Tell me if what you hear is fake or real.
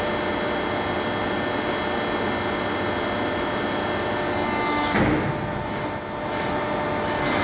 real